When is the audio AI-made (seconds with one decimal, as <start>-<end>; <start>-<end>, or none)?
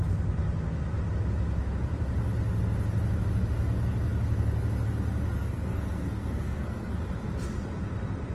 5.4-7.0